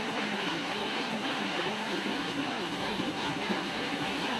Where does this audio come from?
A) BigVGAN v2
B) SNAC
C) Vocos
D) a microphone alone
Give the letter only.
B